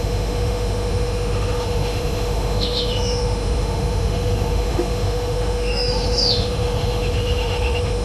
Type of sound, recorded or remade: remade